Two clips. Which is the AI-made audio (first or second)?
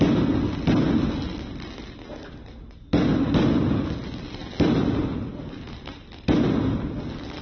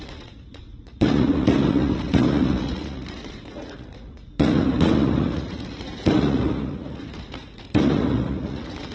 second